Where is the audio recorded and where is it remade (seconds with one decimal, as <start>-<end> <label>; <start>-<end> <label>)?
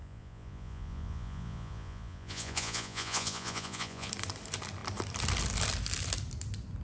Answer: 0.0-4.1 remade; 4.1-6.8 recorded